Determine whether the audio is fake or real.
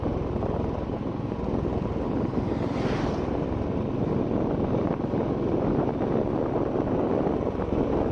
real